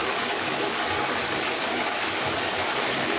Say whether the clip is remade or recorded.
remade